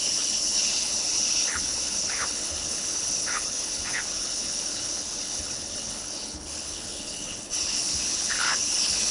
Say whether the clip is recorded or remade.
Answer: remade